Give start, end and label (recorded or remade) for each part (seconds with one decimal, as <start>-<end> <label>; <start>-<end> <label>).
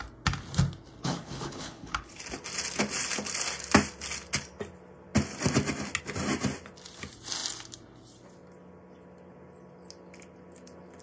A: 0.0-1.0 recorded; 1.0-2.2 remade; 2.2-11.0 recorded